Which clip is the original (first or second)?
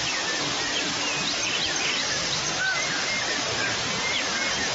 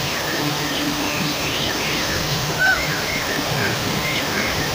first